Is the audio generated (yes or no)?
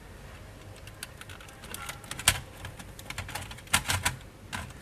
no